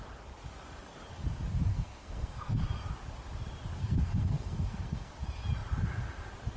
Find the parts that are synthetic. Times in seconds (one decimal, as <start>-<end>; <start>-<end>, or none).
1.7-2.6; 3.8-5.1